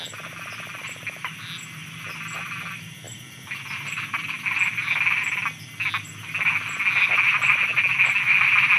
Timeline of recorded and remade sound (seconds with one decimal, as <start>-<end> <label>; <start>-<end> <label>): 0.0-8.8 recorded